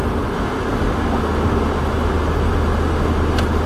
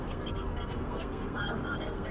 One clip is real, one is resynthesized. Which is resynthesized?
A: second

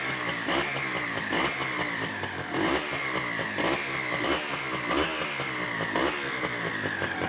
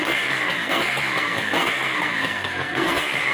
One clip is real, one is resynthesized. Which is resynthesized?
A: second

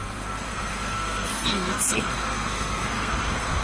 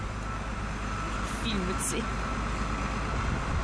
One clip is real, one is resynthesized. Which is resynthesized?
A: first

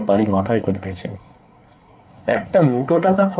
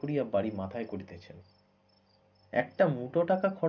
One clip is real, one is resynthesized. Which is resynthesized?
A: first